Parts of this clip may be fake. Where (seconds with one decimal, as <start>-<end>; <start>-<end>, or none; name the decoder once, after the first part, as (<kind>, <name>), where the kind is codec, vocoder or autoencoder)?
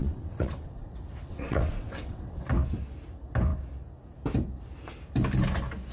0.0-0.9 (vocoder, WaveNeXt); 1.3-2.5